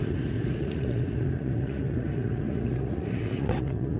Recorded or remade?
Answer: remade